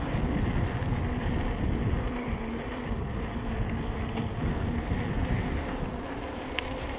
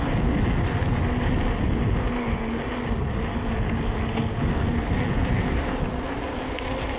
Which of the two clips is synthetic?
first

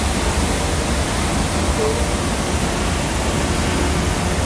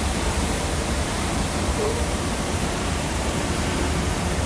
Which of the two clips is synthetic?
second